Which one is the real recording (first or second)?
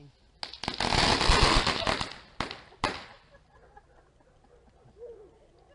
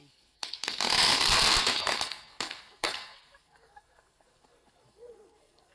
first